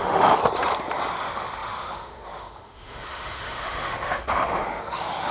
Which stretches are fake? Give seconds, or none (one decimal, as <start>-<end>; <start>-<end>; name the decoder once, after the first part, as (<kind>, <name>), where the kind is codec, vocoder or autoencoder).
0.0-0.4 (autoencoder, DAC-VAE); 1.1-5.3